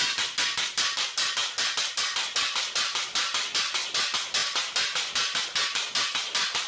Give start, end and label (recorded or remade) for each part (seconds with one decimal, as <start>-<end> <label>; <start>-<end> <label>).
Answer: 0.0-6.7 recorded